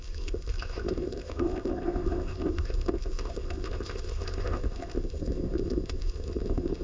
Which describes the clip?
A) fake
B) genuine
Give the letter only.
A